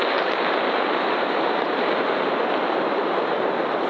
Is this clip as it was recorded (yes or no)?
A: no